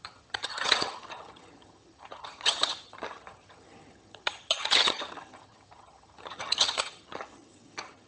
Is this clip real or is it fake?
fake